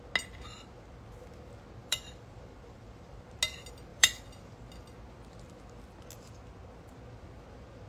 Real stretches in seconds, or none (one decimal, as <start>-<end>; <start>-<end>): 0.0-1.8; 3.3-3.9; 4.6-7.9